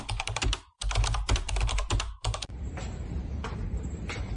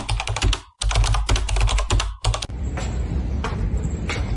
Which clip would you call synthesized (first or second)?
first